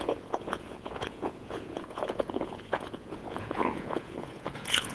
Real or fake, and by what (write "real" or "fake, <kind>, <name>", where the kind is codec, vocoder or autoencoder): fake, vocoder, Vocos